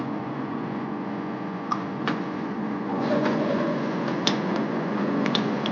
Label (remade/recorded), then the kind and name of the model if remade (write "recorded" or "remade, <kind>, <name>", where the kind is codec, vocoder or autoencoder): remade, vocoder, Vocos